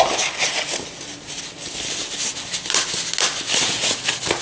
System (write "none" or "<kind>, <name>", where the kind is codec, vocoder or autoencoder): none